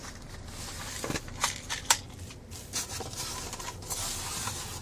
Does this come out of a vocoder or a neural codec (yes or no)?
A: no